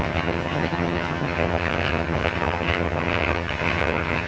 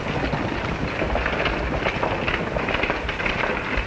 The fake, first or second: first